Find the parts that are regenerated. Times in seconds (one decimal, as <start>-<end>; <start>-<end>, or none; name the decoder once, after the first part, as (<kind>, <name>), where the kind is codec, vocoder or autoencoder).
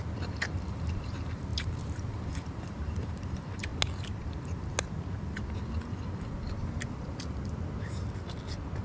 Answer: 0.0-3.7 (vocoder, BigVGAN v2)